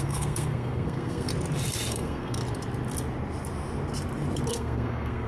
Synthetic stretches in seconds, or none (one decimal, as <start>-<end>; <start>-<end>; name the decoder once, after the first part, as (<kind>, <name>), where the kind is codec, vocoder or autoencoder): 0.0-1.3 (codec, SNAC); 1.9-2.4; 4.5-5.3